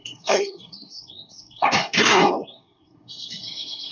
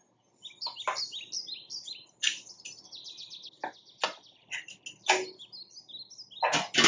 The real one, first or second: second